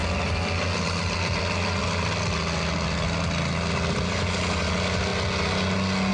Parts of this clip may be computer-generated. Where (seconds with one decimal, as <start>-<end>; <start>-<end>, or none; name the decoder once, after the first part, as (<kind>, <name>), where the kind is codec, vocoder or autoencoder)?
3.7-5.1 (vocoder, BigVGAN v2)